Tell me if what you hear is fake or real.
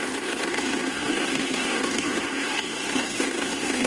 fake